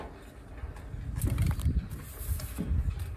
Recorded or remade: recorded